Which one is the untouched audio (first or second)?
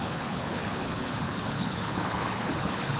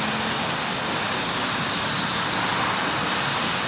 second